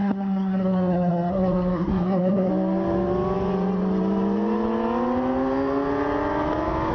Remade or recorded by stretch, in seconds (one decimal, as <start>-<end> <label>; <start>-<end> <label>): 0.0-2.5 remade; 2.5-6.9 recorded